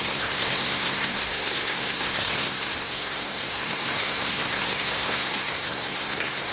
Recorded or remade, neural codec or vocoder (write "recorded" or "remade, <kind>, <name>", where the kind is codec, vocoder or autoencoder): remade, codec, SNAC